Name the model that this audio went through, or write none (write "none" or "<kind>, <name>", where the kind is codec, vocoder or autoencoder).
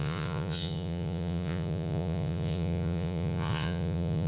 vocoder, Vocos